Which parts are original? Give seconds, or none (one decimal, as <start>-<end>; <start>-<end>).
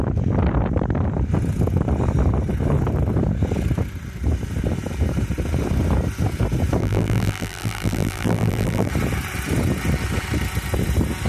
0.0-6.8; 8.9-11.3